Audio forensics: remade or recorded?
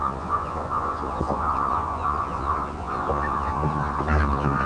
remade